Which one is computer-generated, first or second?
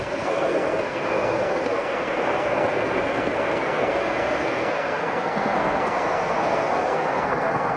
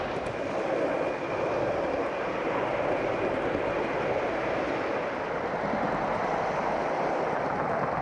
first